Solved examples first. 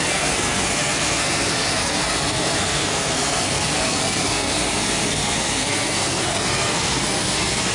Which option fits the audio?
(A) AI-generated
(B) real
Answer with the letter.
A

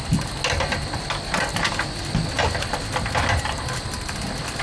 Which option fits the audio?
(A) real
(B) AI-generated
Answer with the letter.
A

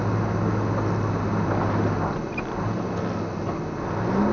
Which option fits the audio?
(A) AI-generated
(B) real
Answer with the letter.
B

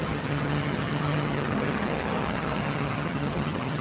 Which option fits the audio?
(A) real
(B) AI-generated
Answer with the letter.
B